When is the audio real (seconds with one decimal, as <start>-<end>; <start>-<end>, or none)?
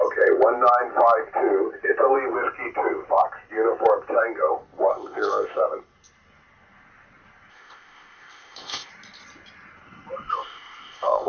0.0-4.9; 5.6-7.5; 8.9-10.3